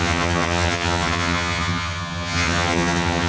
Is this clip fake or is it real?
fake